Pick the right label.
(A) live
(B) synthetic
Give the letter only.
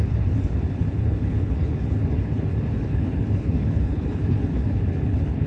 B